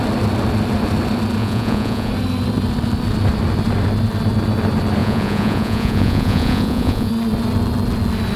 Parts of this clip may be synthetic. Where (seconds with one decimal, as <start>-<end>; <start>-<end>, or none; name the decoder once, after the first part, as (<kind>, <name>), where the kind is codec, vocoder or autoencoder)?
1.4-2.1 (vocoder, Vocos); 5.0-7.1